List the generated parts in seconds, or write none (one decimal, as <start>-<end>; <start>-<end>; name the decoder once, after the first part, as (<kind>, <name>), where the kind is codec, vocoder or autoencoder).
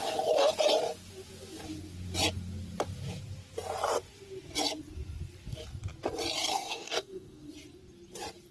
6.5-7.5 (codec, DAC)